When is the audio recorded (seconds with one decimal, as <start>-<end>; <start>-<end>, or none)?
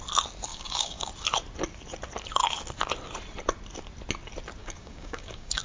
0.0-0.5; 1.1-4.6